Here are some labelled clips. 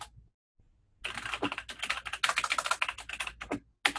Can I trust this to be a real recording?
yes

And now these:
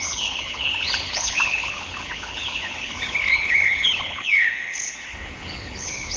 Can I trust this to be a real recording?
no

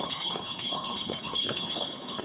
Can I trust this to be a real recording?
no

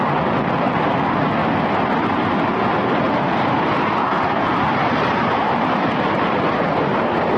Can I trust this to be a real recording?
yes